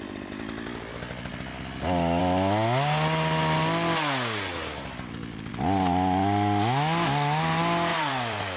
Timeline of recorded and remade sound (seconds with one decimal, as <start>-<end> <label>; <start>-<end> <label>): 0.0-7.9 recorded; 7.9-8.6 remade